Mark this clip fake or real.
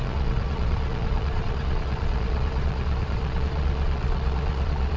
fake